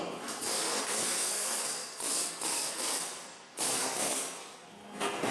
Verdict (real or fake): fake